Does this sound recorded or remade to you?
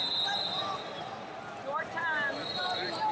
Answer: recorded